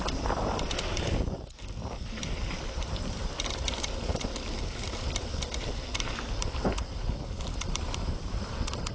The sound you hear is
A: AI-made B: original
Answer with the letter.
A